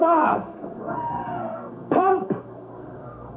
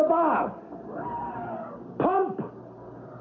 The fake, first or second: first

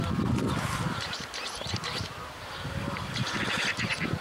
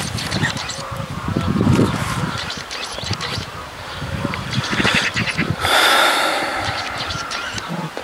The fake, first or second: second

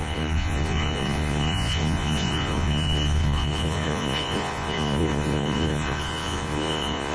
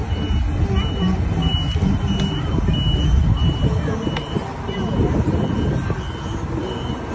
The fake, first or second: first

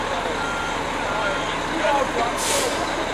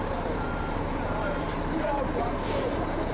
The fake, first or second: second